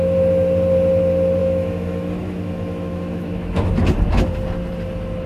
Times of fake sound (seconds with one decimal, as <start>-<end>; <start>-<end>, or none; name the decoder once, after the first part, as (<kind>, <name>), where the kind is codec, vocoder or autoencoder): 1.4-3.7 (autoencoder, DAC-VAE)